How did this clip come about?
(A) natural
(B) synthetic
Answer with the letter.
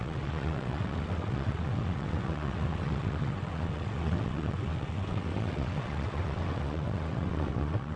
B